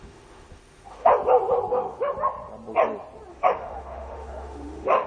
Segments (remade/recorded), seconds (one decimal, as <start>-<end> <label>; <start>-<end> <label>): 0.0-1.1 remade; 1.1-1.7 recorded; 1.7-2.1 remade; 2.1-3.3 recorded; 3.3-5.1 remade